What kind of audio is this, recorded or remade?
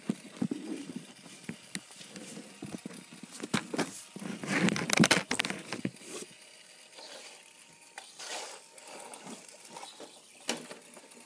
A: recorded